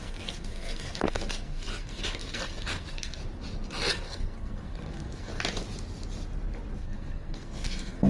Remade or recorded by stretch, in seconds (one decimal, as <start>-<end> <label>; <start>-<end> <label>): 0.0-3.2 remade; 3.2-3.9 recorded; 3.9-5.3 remade; 5.3-6.8 recorded; 6.8-8.1 remade